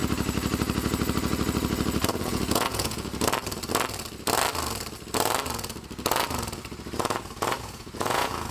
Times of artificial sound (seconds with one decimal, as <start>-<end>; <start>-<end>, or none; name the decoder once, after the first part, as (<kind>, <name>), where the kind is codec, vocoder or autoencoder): 2.1-3.1 (vocoder, Vocos); 7.6-8.5